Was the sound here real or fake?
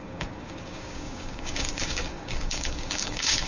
fake